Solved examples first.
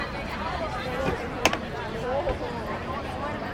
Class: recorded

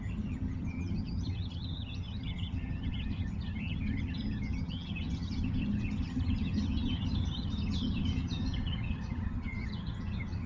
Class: remade